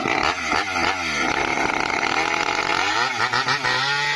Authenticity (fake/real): real